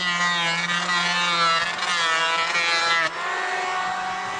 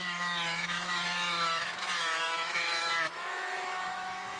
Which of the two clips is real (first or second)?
first